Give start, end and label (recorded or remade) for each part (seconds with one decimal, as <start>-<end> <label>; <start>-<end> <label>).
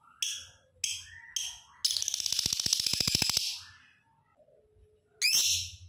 0.0-5.9 recorded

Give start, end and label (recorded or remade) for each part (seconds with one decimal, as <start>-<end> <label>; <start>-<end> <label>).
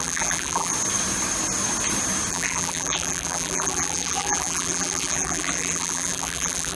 0.0-0.7 remade; 0.7-2.3 recorded; 2.3-6.7 remade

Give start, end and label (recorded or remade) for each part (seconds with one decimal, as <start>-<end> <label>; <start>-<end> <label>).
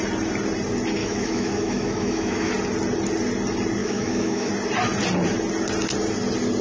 0.0-1.0 recorded; 1.0-2.5 remade; 2.5-3.8 recorded; 3.8-4.5 remade; 4.5-6.6 recorded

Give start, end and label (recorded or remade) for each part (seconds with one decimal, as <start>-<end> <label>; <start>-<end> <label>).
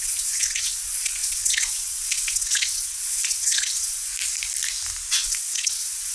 0.0-4.1 remade; 4.1-5.1 recorded; 5.1-6.1 remade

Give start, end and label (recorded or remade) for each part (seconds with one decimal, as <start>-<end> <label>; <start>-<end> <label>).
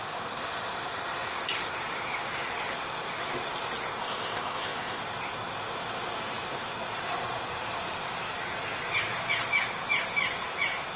0.0-4.0 recorded; 4.0-5.0 remade; 5.0-11.0 recorded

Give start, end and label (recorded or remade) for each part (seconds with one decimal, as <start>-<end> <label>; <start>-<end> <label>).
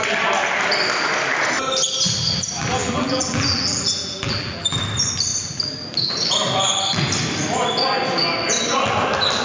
0.0-2.8 recorded; 2.8-4.8 remade; 4.8-9.4 recorded